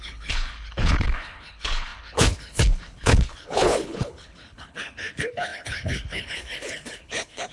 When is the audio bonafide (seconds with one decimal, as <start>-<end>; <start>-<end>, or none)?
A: none